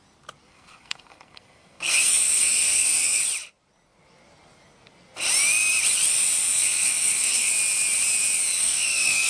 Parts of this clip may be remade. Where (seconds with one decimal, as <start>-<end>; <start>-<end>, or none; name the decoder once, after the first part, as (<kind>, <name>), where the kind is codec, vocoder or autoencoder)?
0.5-3.2 (codec, SNAC); 6.5-7.5; 8.6-9.3